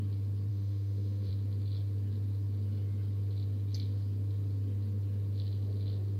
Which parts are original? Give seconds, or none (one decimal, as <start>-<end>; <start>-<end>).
0.0-0.5; 1.3-6.2